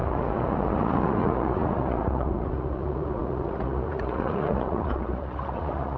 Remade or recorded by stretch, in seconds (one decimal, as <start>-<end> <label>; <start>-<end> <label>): 0.0-6.0 remade